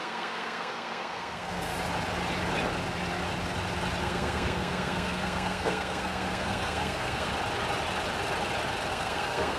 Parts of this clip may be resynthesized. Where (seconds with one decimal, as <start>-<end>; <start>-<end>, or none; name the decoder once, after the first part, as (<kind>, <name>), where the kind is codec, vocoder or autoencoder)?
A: 0.0-1.7 (codec, SNAC); 4.0-7.3; 8.9-9.6